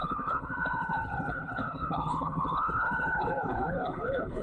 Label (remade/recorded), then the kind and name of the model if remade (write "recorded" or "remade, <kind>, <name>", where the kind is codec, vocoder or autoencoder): remade, codec, HILCodec